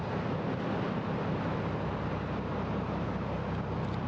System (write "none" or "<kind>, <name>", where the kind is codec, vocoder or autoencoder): none